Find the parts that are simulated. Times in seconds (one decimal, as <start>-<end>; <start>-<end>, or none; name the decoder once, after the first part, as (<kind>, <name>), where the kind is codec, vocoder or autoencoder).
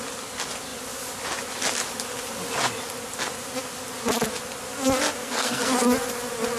5.2-5.8 (codec, SNAC)